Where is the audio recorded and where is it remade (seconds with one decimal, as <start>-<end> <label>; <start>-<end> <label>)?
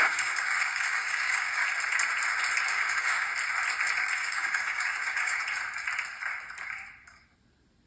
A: 0.0-1.6 remade; 1.6-2.7 recorded; 2.7-3.3 remade; 3.3-4.0 recorded; 4.0-5.4 remade; 5.4-7.9 recorded